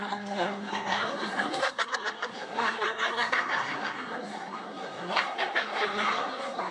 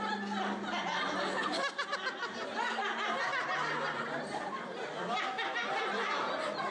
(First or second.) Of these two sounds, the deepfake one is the first